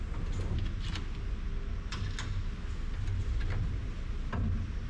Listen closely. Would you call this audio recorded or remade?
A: recorded